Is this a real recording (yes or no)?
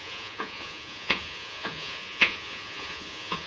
no